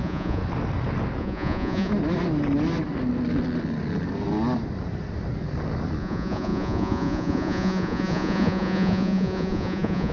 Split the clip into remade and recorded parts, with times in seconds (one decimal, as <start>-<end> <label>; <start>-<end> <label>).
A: 0.0-0.4 remade; 0.4-1.2 recorded; 1.2-1.9 remade; 1.9-6.0 recorded; 6.0-10.1 remade